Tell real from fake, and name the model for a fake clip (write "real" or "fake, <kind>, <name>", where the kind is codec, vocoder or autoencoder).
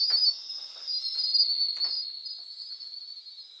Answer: real